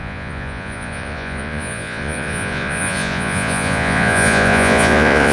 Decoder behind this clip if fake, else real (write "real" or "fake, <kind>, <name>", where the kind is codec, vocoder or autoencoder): fake, vocoder, Vocos